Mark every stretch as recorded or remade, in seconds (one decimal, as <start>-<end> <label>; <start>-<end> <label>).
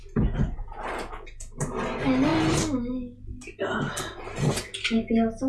0.0-5.5 recorded